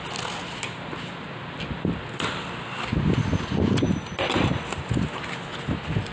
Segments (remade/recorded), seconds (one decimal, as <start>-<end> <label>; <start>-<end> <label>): 0.0-6.1 recorded